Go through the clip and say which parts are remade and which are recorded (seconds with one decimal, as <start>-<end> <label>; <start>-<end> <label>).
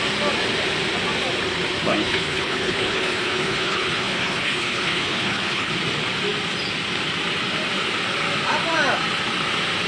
0.0-1.9 recorded; 1.9-5.7 remade; 5.7-9.9 recorded